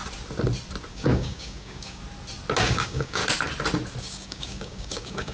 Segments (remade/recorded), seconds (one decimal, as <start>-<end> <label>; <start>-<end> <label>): 0.0-0.9 recorded; 0.9-2.0 remade; 2.0-2.6 recorded; 2.6-3.2 remade; 3.2-4.0 recorded; 4.0-5.3 remade